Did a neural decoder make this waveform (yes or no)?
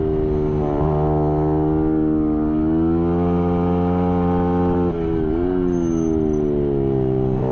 no